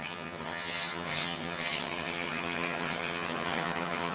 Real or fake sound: fake